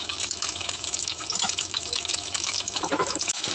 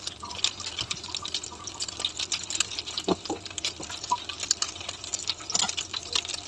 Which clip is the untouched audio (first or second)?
second